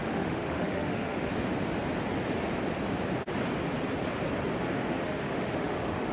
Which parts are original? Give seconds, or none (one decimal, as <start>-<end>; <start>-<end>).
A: 1.3-5.0